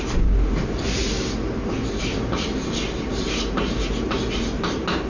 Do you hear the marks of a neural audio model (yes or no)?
no